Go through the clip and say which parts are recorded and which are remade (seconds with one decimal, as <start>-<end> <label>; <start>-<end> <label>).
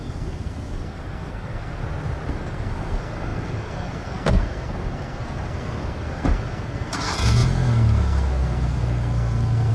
0.0-1.8 remade; 1.8-2.3 recorded; 2.3-9.7 remade